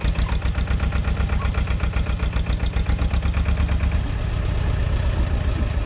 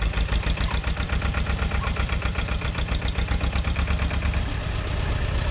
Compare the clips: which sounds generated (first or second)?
second